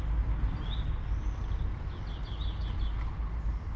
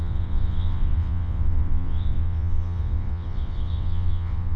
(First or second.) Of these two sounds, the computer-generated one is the second